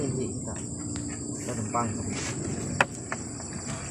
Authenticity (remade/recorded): recorded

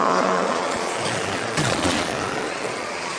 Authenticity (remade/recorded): remade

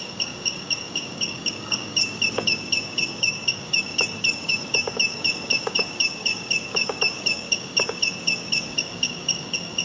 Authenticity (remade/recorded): remade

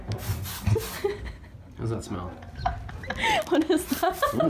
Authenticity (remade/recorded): recorded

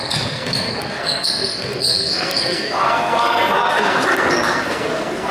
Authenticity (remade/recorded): remade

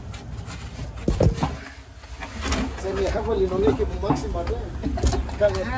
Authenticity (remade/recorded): recorded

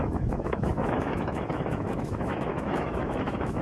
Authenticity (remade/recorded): remade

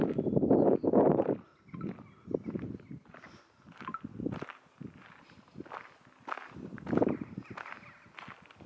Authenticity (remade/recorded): recorded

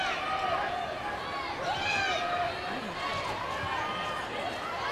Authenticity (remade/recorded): recorded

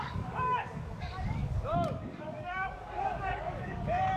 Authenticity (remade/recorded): remade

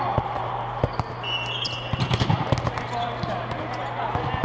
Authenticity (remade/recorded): recorded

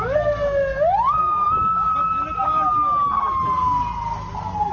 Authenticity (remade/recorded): recorded